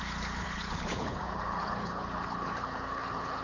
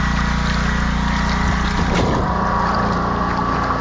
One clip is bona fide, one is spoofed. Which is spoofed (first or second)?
first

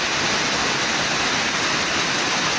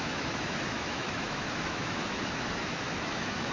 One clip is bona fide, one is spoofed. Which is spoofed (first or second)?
second